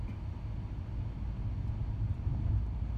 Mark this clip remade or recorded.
recorded